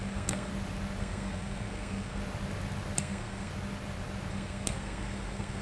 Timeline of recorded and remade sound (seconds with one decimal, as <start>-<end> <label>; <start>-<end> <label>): 0.0-0.5 remade; 0.5-1.0 recorded; 1.0-2.2 remade; 2.2-3.0 recorded; 3.0-3.5 remade; 3.5-4.3 recorded; 4.3-5.6 remade